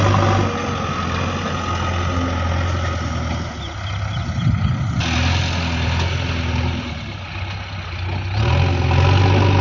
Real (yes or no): yes